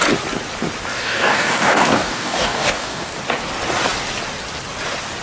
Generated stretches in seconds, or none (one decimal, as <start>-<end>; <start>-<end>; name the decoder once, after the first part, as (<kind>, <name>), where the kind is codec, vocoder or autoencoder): 0.9-3.1 (codec, DAC)